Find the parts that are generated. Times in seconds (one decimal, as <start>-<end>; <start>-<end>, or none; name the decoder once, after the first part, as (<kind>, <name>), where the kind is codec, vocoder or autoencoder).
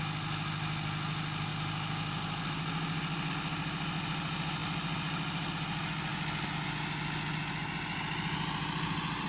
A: none